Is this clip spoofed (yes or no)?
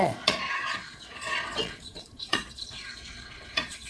yes